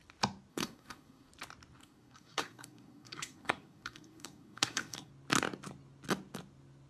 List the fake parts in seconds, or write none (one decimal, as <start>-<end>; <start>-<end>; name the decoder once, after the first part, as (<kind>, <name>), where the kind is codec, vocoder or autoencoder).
0.5-1.3 (codec, SNAC); 1.8-5.1

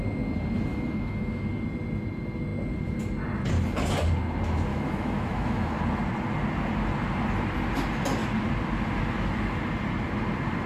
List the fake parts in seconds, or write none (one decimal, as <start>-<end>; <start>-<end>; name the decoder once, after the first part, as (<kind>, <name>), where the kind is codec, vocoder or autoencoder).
0.7-1.4 (autoencoder, DAC-VAE); 4.7-5.8

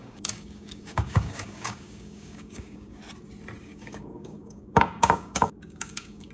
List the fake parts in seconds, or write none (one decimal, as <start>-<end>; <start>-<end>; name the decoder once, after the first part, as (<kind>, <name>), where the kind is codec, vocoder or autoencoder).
0.0-3.0 (codec, DAC); 3.6-6.3

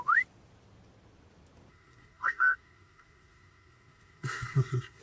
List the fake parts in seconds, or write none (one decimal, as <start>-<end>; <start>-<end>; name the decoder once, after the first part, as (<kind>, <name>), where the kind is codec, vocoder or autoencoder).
1.7-5.0 (codec, SNAC)